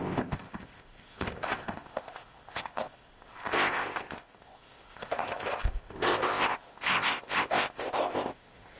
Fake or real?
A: fake